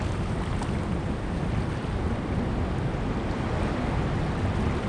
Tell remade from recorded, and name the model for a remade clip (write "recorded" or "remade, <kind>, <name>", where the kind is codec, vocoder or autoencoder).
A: recorded